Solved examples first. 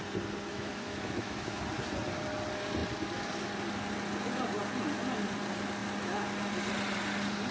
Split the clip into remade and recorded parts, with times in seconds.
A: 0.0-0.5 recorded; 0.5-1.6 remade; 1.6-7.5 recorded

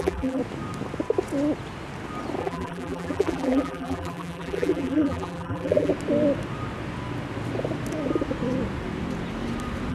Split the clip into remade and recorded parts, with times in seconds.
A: 0.0-0.4 remade; 0.4-2.4 recorded; 2.4-5.9 remade; 5.9-9.9 recorded

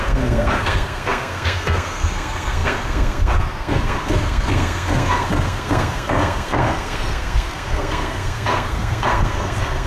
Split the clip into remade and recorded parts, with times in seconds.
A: 0.0-9.9 remade

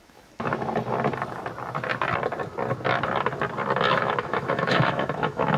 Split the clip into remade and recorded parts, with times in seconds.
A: 0.0-0.5 remade; 0.5-3.9 recorded; 3.9-5.6 remade

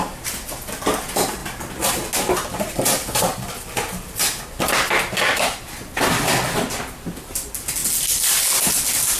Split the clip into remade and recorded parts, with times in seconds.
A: 0.0-9.2 recorded

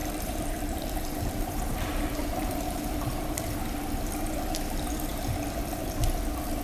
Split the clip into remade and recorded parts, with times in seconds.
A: 0.0-3.5 remade; 3.5-6.6 recorded

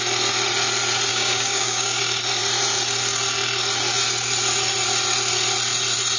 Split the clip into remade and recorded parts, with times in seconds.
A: 0.0-1.1 recorded; 1.1-2.0 remade; 2.0-6.2 recorded